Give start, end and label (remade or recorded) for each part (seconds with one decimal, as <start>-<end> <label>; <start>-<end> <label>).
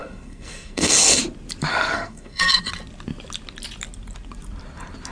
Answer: 0.0-1.2 remade; 1.2-1.7 recorded; 1.7-2.6 remade; 2.6-5.1 recorded